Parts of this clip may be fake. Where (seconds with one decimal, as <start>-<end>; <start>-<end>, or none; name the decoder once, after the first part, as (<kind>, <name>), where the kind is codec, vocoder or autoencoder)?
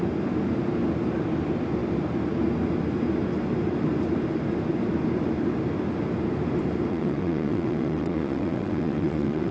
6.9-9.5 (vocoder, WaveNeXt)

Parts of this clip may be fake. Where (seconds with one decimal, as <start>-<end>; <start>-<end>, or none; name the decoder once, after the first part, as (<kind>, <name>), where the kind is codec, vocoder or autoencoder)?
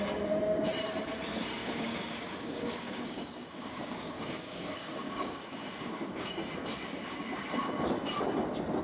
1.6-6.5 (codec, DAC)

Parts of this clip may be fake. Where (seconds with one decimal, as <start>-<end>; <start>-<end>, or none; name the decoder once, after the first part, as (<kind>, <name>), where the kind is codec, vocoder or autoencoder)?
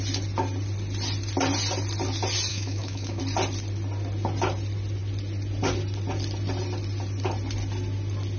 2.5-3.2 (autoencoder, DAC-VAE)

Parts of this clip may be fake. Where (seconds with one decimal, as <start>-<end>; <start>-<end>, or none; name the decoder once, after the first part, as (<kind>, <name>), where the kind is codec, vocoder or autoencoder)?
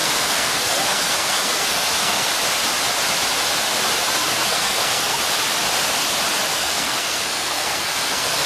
0.0-2.3 (codec, SNAC); 4.2-5.2; 6.5-8.5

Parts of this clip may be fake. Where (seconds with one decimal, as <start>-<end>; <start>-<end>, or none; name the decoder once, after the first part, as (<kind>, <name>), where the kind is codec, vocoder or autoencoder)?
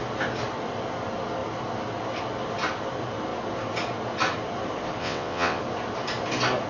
5.0-5.6 (vocoder, WaveNeXt)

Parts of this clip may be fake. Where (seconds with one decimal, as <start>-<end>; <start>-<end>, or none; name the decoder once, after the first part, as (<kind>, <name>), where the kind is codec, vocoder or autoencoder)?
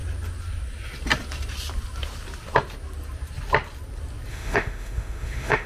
4.3-5.7 (autoencoder, DAC-VAE)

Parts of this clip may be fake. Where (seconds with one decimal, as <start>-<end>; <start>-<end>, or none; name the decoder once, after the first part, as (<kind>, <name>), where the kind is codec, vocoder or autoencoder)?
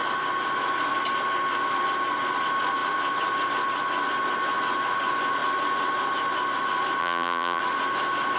7.0-7.6 (vocoder, BigVGAN v2)